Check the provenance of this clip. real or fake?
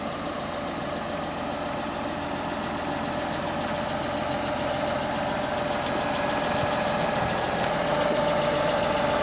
real